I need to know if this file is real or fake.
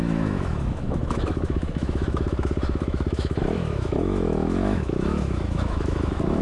fake